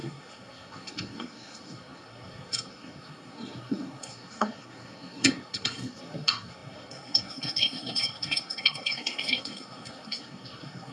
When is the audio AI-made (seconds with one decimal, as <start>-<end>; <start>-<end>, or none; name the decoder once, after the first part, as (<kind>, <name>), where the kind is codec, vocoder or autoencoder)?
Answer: 0.0-10.9 (codec, SNAC)